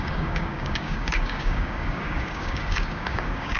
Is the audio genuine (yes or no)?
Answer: no